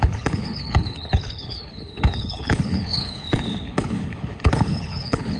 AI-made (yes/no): yes